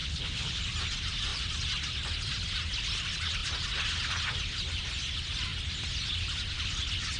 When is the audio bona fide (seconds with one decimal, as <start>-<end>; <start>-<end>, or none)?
0.6-7.2

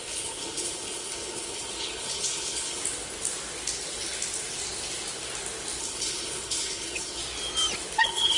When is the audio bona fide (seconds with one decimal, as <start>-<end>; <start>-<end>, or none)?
2.8-5.8; 7.2-8.0

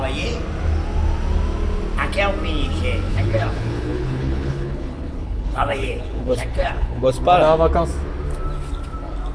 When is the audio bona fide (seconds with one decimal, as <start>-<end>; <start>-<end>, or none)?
0.0-3.1; 7.1-9.3